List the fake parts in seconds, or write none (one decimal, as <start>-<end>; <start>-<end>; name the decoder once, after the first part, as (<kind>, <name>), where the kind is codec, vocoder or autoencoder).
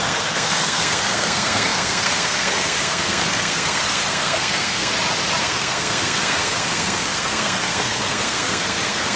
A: 0.0-4.9 (codec, SNAC); 5.4-9.2